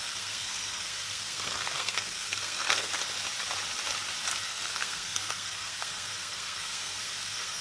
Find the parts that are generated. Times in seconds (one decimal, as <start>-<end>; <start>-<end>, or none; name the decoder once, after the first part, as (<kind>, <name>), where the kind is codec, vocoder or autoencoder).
0.0-2.9 (codec, SNAC); 4.4-7.6